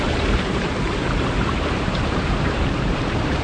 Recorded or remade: remade